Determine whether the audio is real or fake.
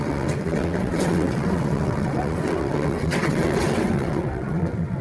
fake